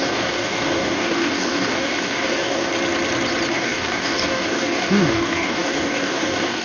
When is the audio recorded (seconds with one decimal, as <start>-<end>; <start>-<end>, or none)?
2.7-3.5

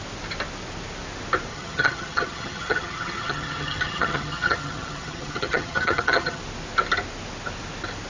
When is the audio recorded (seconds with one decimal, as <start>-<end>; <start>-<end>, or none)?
0.0-1.5; 6.4-8.1

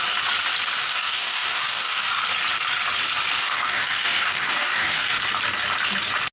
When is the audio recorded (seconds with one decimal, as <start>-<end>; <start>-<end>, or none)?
0.0-0.8; 2.2-3.4; 5.2-6.3

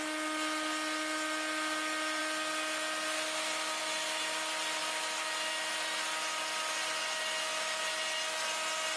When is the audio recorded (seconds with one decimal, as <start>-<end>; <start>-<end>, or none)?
0.0-9.0

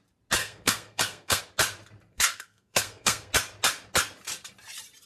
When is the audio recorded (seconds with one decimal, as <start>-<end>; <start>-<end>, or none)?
0.0-0.4; 1.4-2.1; 3.3-5.1

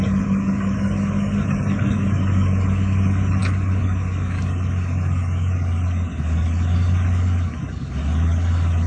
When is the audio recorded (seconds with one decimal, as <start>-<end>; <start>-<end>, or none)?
none